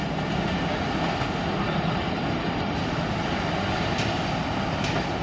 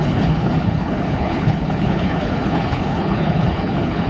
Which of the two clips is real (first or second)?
first